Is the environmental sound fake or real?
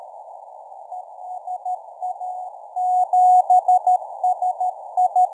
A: real